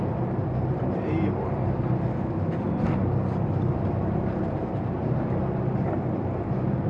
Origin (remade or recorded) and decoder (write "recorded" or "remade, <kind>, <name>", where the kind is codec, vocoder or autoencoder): remade, vocoder, BigVGAN v2